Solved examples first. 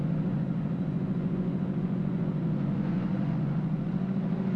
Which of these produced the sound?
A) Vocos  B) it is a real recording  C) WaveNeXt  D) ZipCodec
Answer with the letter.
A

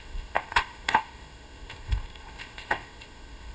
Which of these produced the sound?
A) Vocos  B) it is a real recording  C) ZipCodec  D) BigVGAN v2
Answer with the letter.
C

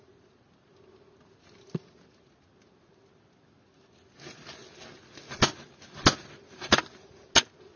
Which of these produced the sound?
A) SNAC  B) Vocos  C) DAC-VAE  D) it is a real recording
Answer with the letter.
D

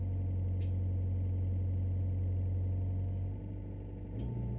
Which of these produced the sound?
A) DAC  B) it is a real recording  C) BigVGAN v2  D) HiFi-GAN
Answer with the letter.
B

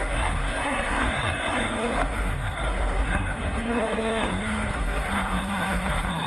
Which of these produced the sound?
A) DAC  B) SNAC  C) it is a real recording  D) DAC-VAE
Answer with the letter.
B